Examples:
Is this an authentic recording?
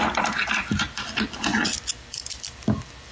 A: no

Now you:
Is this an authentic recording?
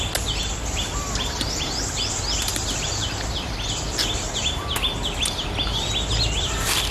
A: yes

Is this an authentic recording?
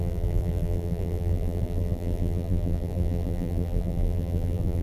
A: no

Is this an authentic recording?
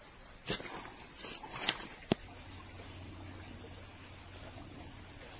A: yes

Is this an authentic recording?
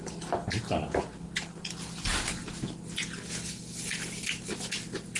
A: yes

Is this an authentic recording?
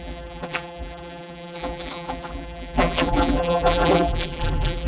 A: no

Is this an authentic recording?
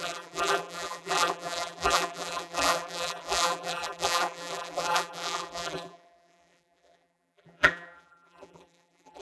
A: no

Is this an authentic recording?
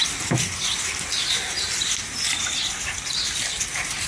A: yes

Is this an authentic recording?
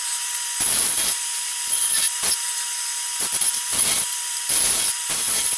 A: no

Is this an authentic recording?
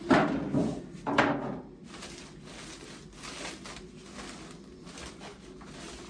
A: yes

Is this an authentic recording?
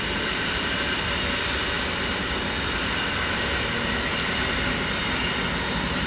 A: yes